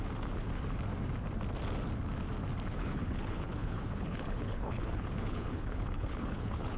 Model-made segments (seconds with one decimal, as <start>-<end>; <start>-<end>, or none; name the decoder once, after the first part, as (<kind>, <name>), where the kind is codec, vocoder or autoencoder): 2.7-6.8 (codec, HILCodec)